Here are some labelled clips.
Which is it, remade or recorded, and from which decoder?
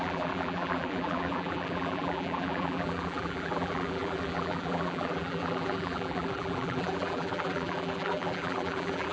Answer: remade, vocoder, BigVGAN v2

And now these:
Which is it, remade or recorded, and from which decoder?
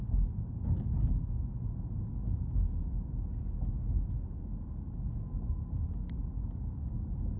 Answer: recorded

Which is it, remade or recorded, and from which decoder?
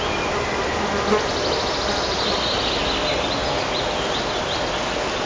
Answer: recorded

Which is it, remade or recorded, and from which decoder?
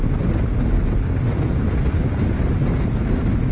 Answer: recorded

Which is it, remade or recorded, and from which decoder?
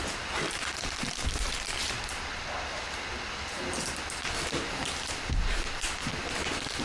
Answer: remade, vocoder, BigVGAN v2